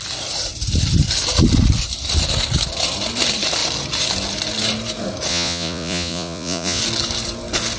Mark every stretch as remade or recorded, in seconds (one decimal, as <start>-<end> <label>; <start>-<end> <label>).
0.0-5.3 recorded; 5.3-6.8 remade; 6.8-7.8 recorded